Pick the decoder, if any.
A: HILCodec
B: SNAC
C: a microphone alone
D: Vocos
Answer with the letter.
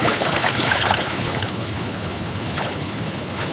A